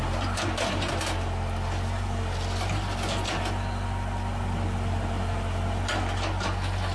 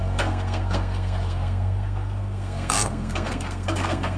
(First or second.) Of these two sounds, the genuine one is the first